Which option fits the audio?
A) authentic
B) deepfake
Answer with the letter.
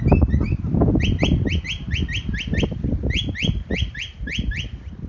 A